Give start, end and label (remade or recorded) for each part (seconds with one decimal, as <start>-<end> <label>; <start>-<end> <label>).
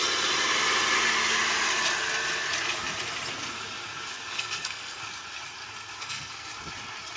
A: 0.0-4.3 recorded; 4.3-5.0 remade; 5.0-6.0 recorded; 6.0-6.5 remade; 6.5-7.2 recorded